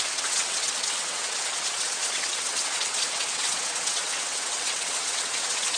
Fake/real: fake